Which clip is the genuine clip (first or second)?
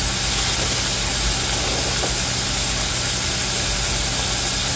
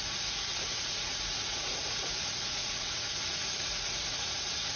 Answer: first